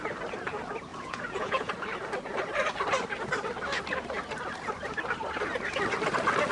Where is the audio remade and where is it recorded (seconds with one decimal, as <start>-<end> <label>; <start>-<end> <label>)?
0.0-0.9 recorded; 0.9-1.7 remade; 1.7-6.5 recorded